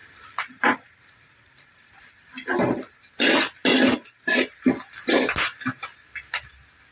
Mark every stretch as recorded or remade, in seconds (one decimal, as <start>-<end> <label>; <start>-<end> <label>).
0.0-2.0 remade; 2.0-6.9 recorded